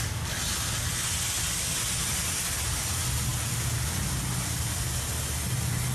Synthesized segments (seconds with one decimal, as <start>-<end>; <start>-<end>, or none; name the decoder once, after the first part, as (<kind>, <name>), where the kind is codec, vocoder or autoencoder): none